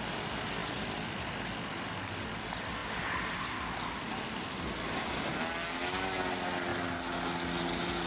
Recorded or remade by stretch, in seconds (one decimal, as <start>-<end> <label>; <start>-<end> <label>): 0.0-0.6 recorded; 0.6-1.2 remade; 1.2-8.1 recorded